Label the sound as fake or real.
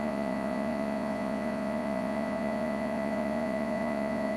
fake